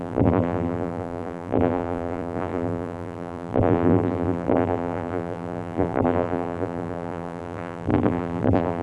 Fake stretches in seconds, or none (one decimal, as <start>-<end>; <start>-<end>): 0.0-8.8